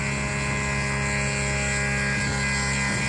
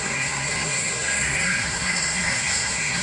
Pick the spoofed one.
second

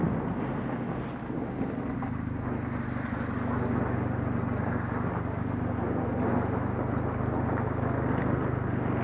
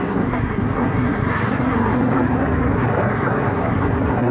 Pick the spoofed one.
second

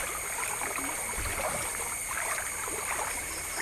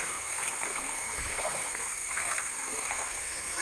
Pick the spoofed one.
second